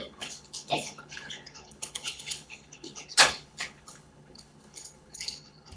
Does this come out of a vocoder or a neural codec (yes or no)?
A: yes